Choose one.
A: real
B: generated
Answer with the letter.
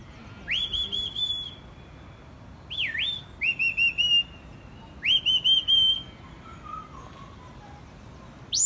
A